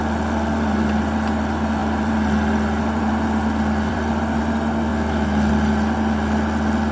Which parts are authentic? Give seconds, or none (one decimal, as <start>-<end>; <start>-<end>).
0.0-1.8; 4.4-6.9